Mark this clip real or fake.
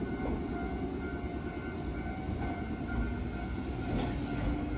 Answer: real